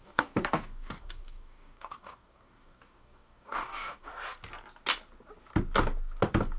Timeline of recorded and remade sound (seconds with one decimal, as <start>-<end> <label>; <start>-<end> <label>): 0.0-4.1 remade; 4.1-6.6 recorded